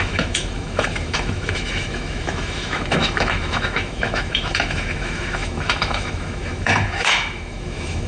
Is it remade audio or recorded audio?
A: remade